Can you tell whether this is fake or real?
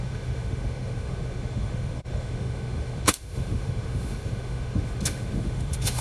fake